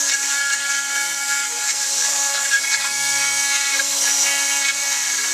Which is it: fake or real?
fake